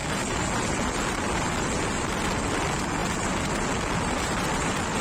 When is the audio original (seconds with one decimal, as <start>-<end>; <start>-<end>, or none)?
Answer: 0.0-5.0